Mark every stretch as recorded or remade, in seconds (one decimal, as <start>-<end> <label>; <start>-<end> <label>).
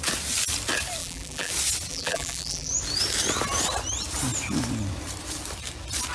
0.0-1.0 recorded; 1.0-1.5 remade; 1.5-1.9 recorded; 1.9-2.7 remade; 2.7-6.1 recorded